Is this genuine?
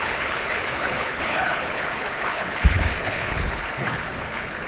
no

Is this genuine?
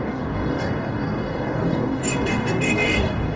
no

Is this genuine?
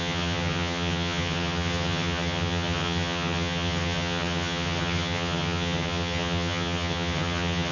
no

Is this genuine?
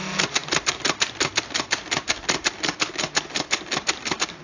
yes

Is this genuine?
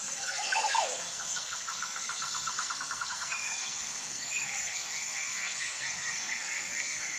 no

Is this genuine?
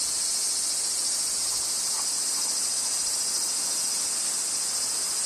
yes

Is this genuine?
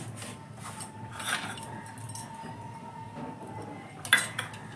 yes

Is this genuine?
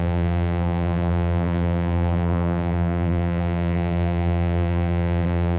no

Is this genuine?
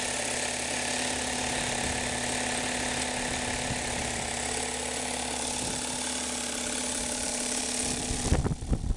yes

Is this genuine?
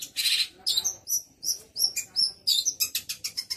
yes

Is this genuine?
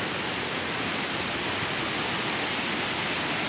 yes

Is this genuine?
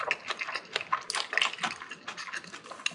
yes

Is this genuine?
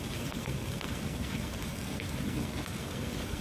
no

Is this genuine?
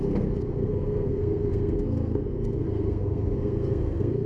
no